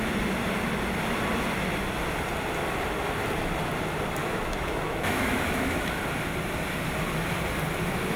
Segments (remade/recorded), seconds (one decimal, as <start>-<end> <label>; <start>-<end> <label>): 0.0-4.2 recorded; 4.2-6.0 remade; 6.0-8.2 recorded